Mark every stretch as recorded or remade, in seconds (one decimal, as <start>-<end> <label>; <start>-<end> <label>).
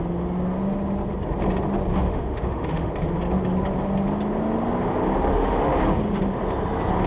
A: 0.0-1.9 recorded; 1.9-2.9 remade; 2.9-5.3 recorded; 5.3-5.8 remade; 5.8-7.1 recorded